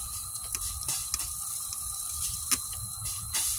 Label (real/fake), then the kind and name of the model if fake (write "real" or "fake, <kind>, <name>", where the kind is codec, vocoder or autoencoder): real